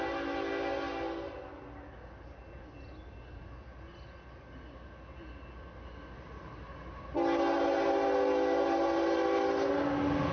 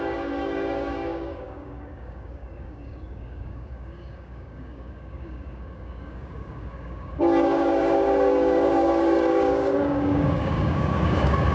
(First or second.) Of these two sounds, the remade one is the second